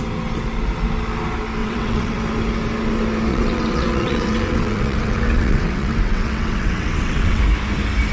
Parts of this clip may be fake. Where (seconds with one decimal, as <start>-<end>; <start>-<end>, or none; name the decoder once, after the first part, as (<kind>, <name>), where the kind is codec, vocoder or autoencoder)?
1.6-2.2 (vocoder, WaveNeXt); 3.3-7.4